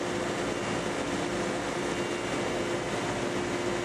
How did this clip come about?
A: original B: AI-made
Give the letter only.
A